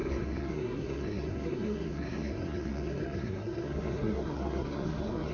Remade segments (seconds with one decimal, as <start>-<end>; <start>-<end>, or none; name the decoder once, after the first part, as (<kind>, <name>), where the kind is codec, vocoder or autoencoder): 0.0-5.3 (codec, SNAC)